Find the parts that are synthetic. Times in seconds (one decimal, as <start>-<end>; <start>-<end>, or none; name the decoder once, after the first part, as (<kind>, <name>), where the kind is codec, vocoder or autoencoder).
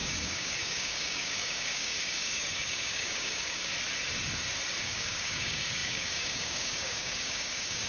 0.0-3.7 (codec, DAC); 4.8-7.9